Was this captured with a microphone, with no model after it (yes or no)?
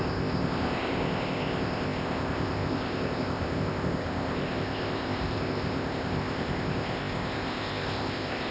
no